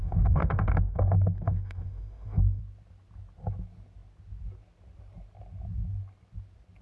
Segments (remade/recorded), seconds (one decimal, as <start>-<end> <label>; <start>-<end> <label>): 0.0-2.6 remade; 2.6-6.8 recorded